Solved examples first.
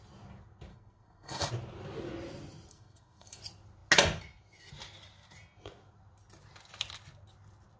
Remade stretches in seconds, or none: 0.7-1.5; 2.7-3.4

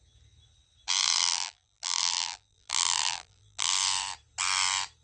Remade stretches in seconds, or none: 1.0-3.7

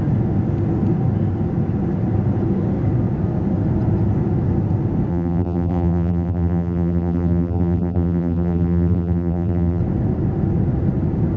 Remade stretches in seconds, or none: 5.1-9.8

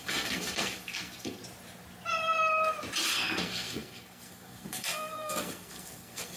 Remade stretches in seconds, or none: 0.0-1.4; 3.1-6.4